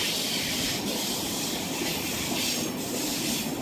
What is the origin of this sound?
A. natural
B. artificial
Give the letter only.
A